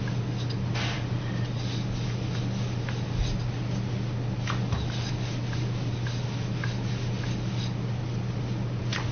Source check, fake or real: real